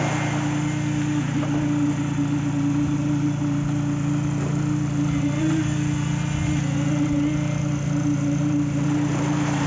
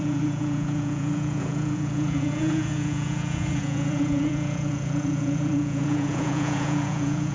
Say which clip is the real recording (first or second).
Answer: first